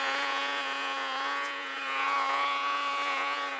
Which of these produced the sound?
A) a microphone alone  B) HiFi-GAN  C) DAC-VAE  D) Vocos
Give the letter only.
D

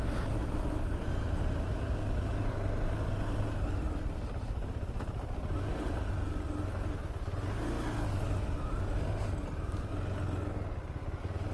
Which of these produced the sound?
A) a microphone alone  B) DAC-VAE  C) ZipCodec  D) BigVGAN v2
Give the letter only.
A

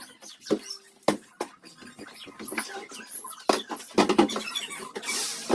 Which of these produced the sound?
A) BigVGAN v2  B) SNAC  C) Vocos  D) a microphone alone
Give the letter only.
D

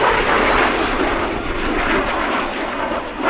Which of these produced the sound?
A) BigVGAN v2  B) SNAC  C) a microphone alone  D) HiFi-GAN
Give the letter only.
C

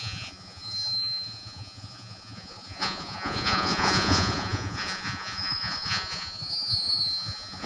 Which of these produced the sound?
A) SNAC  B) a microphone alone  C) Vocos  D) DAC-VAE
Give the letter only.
C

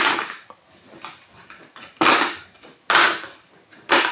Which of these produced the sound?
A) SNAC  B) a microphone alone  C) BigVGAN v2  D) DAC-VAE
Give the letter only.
B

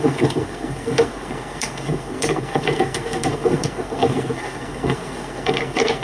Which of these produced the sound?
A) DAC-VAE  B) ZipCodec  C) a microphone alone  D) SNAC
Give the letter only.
D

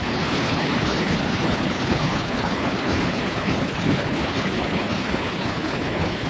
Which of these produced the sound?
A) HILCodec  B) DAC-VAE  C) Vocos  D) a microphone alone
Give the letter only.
A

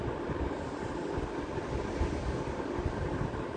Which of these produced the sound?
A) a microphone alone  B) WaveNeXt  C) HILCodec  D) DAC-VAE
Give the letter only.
A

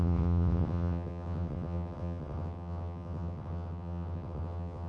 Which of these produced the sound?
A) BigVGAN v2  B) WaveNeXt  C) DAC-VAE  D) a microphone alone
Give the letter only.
B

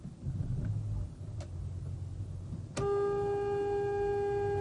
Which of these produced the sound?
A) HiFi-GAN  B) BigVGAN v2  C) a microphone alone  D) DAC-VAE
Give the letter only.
C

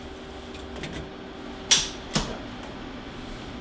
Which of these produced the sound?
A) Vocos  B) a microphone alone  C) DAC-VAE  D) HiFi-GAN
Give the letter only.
B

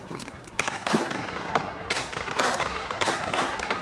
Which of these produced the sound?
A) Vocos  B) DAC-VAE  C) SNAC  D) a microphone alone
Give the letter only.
C